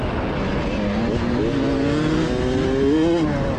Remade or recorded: recorded